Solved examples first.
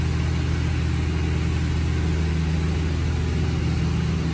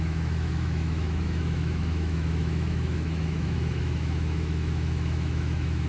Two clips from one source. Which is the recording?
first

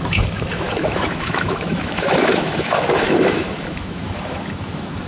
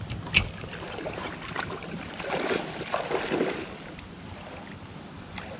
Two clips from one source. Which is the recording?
second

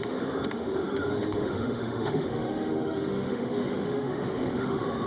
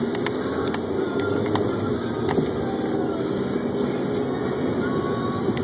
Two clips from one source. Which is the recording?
second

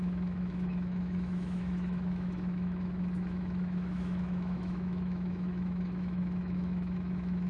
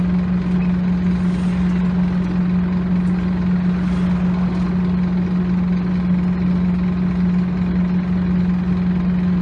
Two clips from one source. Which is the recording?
second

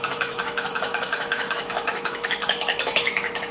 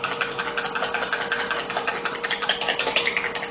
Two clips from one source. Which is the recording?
second